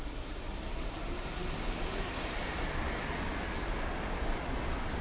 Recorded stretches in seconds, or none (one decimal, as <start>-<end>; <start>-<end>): 0.0-5.0